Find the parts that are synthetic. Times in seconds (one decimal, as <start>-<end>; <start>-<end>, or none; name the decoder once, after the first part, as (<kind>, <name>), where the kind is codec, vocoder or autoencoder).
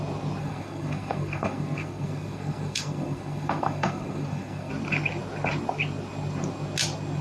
0.4-4.7 (codec, SNAC)